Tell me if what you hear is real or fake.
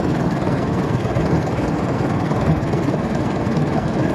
fake